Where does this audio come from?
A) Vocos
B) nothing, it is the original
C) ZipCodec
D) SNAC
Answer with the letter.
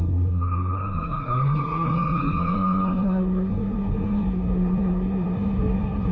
D